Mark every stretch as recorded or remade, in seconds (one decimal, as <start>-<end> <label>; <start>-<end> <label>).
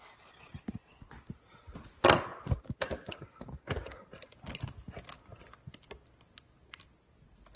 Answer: 0.0-7.6 recorded